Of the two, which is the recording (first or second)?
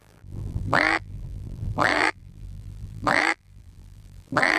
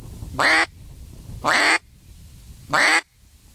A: second